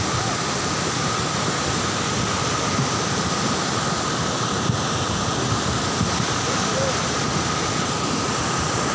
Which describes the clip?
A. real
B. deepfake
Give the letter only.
A